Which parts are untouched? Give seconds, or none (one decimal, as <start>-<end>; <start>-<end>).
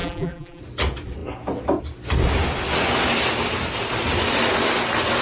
0.6-5.2